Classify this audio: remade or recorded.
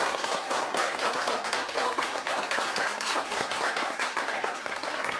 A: remade